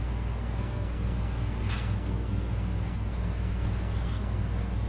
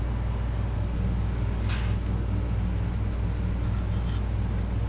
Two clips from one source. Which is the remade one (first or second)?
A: first